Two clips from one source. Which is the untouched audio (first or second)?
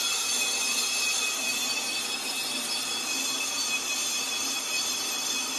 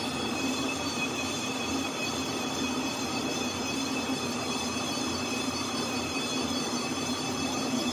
first